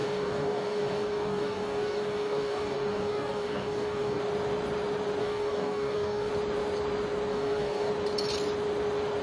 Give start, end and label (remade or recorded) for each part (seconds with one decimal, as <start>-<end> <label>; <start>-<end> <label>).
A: 0.0-4.2 remade; 4.2-5.2 recorded; 5.2-6.3 remade; 6.3-7.3 recorded; 7.3-7.9 remade; 7.9-9.2 recorded

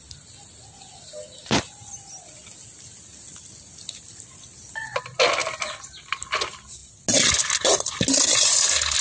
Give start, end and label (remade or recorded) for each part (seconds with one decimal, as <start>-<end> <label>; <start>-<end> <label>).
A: 0.0-9.0 recorded

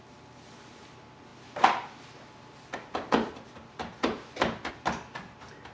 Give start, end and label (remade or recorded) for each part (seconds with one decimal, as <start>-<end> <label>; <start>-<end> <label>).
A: 0.0-5.7 recorded